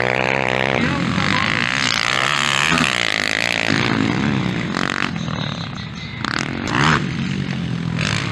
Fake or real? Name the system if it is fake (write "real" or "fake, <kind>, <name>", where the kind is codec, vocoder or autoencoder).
real